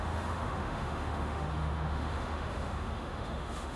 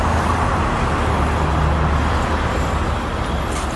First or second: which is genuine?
second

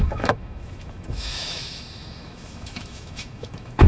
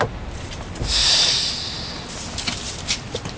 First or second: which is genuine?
second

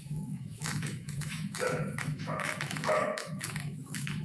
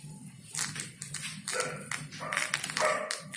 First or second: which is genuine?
second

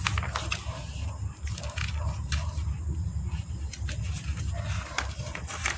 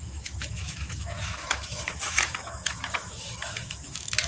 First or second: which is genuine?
first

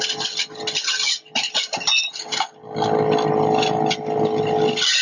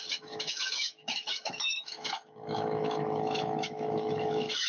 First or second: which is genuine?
first